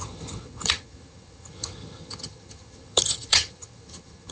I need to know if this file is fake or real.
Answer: fake